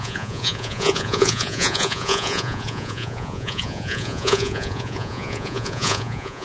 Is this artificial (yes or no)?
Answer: yes